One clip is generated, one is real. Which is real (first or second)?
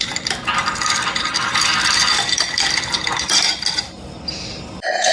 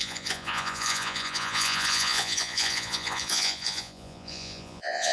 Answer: first